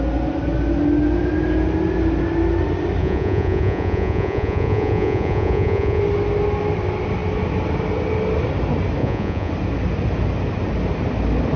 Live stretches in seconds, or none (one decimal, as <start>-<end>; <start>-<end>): 0.0-3.0; 6.0-9.0; 9.5-11.6